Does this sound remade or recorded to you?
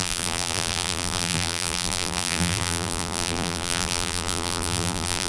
remade